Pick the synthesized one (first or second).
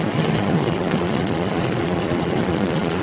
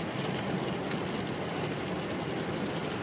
first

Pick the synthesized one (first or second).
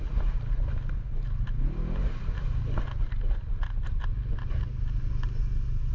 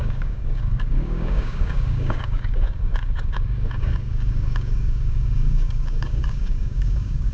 second